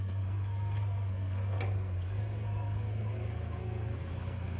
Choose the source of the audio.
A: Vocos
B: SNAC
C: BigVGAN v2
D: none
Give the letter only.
B